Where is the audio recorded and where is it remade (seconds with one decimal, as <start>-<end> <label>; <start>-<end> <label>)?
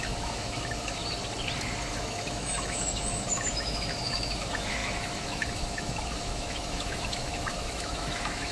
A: 0.0-1.0 remade; 1.0-1.9 recorded; 1.9-8.5 remade